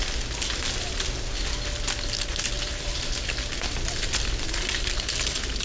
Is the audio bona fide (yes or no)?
yes